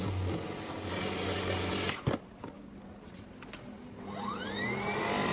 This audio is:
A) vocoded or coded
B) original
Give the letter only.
B